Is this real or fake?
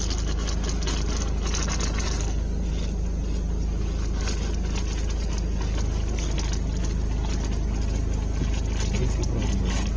real